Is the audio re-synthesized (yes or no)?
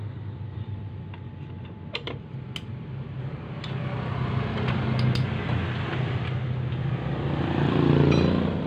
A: no